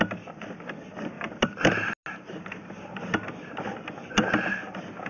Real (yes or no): yes